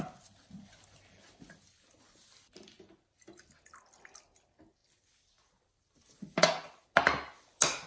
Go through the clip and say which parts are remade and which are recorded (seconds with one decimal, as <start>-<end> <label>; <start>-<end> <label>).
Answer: 0.0-7.9 recorded

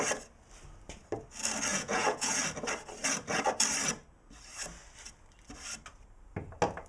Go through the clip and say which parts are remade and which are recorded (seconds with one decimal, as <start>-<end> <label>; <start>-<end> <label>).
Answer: 0.0-1.7 recorded; 1.7-2.4 remade; 2.4-6.9 recorded

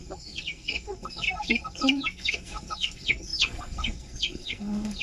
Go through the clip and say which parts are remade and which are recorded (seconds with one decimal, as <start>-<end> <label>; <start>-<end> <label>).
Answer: 0.0-5.0 remade

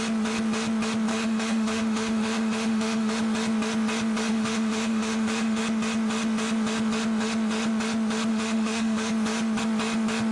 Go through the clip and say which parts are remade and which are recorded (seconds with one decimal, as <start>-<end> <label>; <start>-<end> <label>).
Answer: 0.0-1.1 recorded; 1.1-3.1 remade; 3.1-4.3 recorded; 4.3-5.6 remade; 5.6-8.3 recorded; 8.3-9.1 remade; 9.1-10.3 recorded